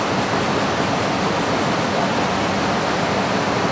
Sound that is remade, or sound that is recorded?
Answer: recorded